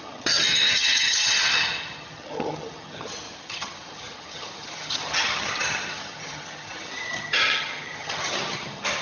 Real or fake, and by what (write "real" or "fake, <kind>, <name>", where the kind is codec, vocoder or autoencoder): fake, vocoder, HiFi-GAN